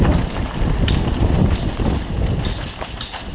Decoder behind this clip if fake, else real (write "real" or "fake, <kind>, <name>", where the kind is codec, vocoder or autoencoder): real